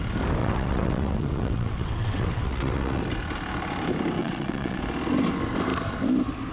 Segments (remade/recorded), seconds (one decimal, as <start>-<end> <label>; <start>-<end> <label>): 0.0-0.4 recorded; 0.4-3.0 remade; 3.0-4.2 recorded; 4.2-4.8 remade; 4.8-6.5 recorded